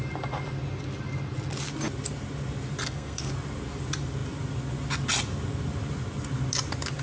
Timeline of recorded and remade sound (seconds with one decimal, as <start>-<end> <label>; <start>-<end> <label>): 0.0-2.8 recorded; 2.8-3.3 remade; 3.3-7.0 recorded